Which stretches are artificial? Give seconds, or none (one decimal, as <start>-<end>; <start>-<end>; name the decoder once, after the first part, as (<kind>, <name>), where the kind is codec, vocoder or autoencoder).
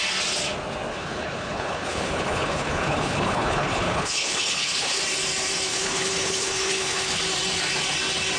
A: 0.9-5.0 (codec, HILCodec); 5.7-7.2